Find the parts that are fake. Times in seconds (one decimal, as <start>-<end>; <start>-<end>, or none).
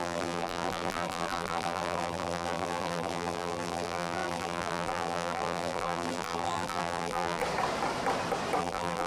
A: 0.0-7.4; 8.6-9.1